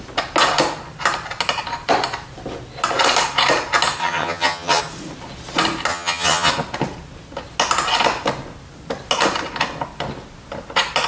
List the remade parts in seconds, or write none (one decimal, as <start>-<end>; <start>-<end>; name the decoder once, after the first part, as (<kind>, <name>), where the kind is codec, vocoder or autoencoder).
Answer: 4.0-4.8 (vocoder, HiFi-GAN); 5.9-6.5